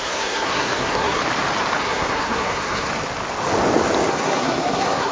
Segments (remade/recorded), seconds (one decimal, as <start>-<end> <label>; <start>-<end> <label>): 0.0-1.2 remade; 1.2-1.8 recorded; 1.8-2.9 remade; 2.9-4.1 recorded; 4.1-5.1 remade